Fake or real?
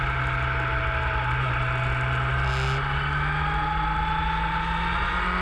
real